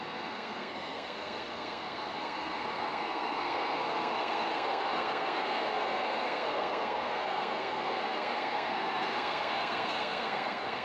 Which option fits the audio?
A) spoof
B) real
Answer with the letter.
A